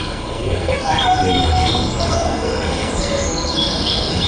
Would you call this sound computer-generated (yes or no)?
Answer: yes